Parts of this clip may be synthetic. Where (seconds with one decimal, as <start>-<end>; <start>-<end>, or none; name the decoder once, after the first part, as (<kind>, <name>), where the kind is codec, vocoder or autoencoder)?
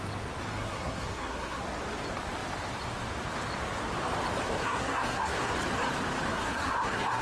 0.5-1.6 (codec, SNAC); 4.6-5.5; 6.3-7.2